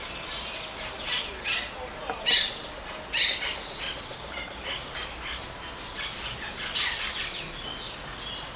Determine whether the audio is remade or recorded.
recorded